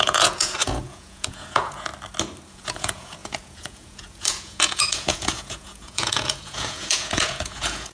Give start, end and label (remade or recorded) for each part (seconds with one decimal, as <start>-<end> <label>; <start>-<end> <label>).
0.0-1.9 remade; 1.9-2.5 recorded; 2.5-7.9 remade